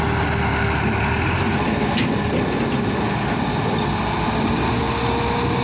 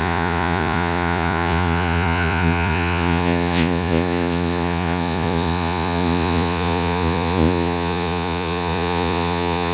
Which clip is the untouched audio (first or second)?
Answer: first